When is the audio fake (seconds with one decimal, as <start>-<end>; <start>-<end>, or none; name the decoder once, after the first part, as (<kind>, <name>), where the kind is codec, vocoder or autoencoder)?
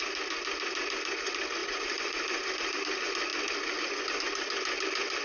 1.6-2.8 (vocoder, BigVGAN v2)